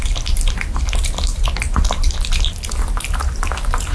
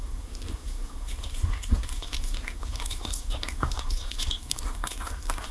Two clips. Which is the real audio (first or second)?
first